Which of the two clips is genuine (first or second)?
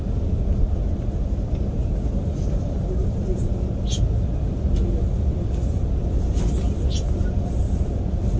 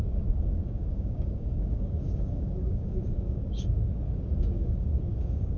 first